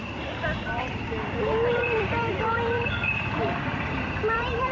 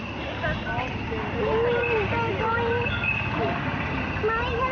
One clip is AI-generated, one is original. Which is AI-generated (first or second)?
first